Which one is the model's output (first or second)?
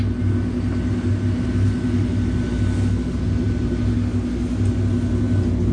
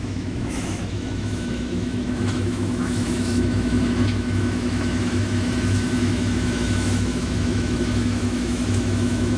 second